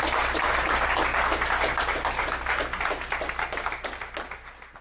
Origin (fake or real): real